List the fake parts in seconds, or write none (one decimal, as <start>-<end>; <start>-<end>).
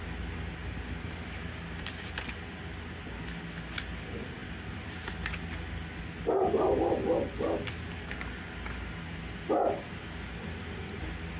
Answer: none